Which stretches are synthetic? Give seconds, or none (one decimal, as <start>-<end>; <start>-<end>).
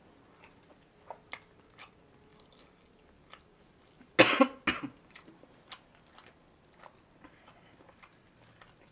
none